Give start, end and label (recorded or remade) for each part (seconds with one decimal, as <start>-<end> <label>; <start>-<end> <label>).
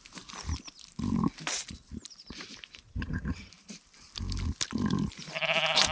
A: 0.0-2.9 recorded; 2.9-3.5 remade; 3.5-5.9 recorded